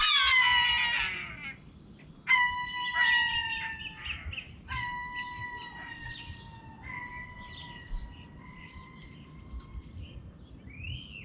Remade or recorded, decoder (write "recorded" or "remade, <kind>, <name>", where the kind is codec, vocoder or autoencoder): recorded